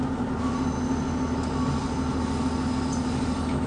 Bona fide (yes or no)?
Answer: yes